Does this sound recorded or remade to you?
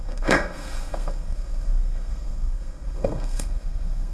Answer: remade